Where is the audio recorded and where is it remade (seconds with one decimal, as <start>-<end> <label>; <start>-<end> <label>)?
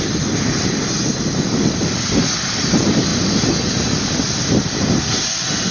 0.0-5.7 recorded